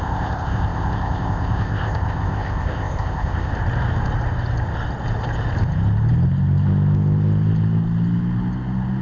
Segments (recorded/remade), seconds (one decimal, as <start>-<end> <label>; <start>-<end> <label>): 0.0-3.5 remade; 3.5-9.0 recorded